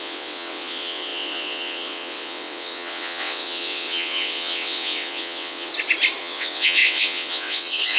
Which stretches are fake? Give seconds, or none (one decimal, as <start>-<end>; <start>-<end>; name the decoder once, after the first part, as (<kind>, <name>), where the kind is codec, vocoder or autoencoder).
0.0-5.7 (vocoder, WaveNeXt); 6.2-8.0